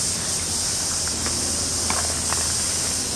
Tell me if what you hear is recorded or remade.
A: recorded